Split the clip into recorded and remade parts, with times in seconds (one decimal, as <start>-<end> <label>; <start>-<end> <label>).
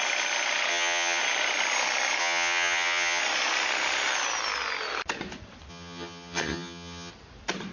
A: 0.0-0.7 recorded; 0.7-1.2 remade; 1.2-2.2 recorded; 2.2-3.2 remade; 3.2-5.7 recorded; 5.7-7.1 remade; 7.1-7.7 recorded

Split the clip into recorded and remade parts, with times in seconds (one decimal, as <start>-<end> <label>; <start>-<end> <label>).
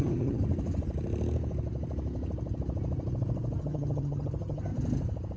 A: 0.0-0.4 remade; 0.4-3.6 recorded; 3.6-4.7 remade; 4.7-5.4 recorded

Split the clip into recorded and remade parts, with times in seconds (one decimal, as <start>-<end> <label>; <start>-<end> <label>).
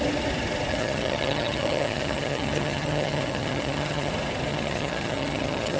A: 0.0-0.7 recorded; 0.7-4.1 remade; 4.1-4.5 recorded; 4.5-5.8 remade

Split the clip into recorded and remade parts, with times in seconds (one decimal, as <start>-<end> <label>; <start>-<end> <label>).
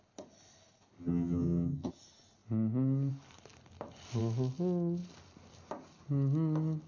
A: 0.0-1.0 recorded; 1.0-1.9 remade; 1.9-6.9 recorded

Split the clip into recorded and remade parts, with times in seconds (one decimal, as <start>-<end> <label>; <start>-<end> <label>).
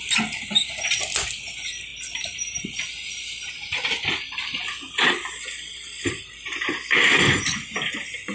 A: 0.0-8.3 recorded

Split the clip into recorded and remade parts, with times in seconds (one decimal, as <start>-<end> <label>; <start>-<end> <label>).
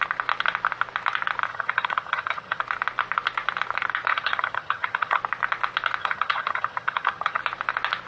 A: 0.0-1.5 recorded; 1.5-2.6 remade; 2.6-4.1 recorded; 4.1-5.2 remade; 5.2-6.0 recorded; 6.0-7.4 remade; 7.4-8.1 recorded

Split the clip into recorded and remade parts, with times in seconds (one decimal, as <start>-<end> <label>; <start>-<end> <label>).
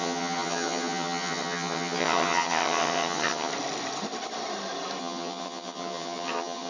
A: 0.0-3.5 remade; 3.5-5.0 recorded; 5.0-6.7 remade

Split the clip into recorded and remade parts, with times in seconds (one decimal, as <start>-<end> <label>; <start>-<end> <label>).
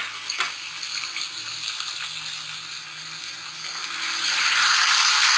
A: 0.0-5.4 recorded